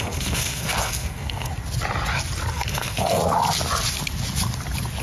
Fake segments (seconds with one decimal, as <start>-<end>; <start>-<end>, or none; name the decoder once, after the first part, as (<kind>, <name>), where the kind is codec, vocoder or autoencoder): 0.0-1.5 (codec, SNAC); 2.5-3.2